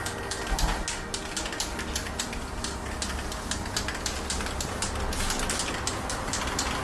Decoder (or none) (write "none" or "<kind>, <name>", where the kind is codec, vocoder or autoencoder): none